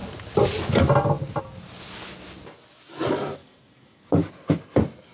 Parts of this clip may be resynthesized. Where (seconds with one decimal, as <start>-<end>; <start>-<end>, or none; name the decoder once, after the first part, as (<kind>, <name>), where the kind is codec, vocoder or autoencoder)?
3.4-4.3 (codec, DAC)